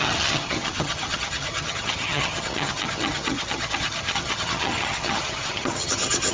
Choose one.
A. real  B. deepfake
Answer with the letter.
B